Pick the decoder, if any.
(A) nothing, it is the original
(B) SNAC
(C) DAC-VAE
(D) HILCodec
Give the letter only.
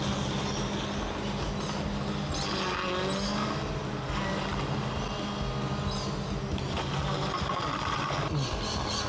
A